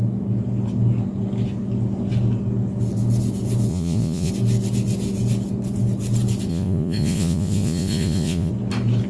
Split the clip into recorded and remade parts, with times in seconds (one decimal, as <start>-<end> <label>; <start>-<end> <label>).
0.0-3.7 recorded; 3.7-4.3 remade; 4.3-6.5 recorded; 6.5-8.5 remade; 8.5-9.1 recorded